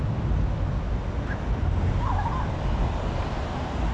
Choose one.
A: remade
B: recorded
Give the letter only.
B